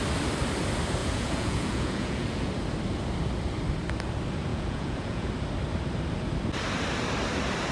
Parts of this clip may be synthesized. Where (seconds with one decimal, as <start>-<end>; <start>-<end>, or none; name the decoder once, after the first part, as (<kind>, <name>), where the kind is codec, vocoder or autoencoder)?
1.0-2.5 (vocoder, Vocos); 4.5-5.3